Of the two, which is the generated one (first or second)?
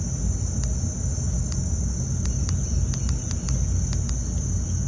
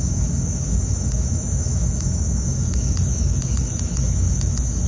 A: second